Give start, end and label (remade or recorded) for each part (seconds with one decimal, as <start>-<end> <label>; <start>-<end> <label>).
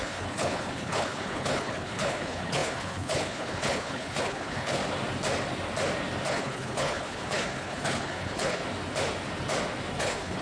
0.0-4.8 remade; 4.8-6.3 recorded; 6.3-8.6 remade; 8.6-10.0 recorded; 10.0-10.4 remade